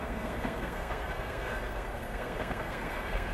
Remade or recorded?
remade